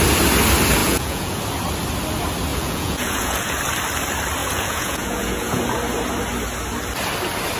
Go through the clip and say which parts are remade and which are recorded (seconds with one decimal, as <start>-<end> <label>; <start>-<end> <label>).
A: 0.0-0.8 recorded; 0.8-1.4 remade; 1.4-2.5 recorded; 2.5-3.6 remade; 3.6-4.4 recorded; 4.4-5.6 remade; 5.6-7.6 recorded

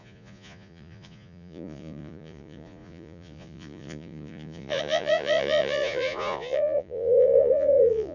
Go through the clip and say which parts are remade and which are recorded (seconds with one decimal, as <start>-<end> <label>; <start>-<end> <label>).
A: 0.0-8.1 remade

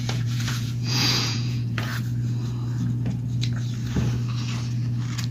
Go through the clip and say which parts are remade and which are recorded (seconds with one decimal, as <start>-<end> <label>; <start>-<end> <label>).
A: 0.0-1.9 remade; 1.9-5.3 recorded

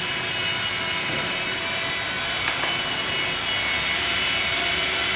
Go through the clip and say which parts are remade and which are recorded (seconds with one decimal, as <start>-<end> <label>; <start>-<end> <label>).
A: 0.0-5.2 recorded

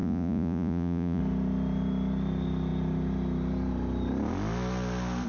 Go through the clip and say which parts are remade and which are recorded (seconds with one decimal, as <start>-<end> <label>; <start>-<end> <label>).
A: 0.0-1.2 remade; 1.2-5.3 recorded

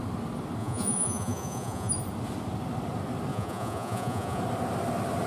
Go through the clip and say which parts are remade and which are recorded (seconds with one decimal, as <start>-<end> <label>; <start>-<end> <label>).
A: 0.0-0.6 recorded; 0.6-1.9 remade; 1.9-3.3 recorded; 3.3-4.4 remade; 4.4-5.3 recorded

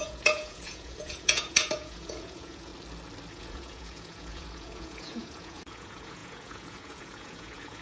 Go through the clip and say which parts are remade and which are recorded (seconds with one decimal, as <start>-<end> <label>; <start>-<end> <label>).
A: 0.0-2.7 remade; 2.7-3.3 recorded; 3.3-7.8 remade